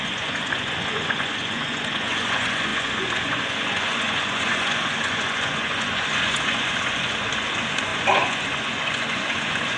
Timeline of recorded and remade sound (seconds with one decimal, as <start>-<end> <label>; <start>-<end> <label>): 0.0-9.8 remade